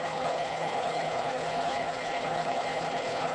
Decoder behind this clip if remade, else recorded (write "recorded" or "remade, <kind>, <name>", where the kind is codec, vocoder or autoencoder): remade, codec, HILCodec